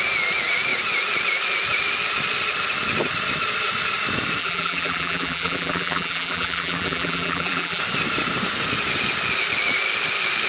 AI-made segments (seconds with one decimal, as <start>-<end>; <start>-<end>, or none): 4.4-7.8